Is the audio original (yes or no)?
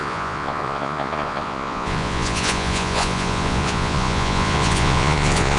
no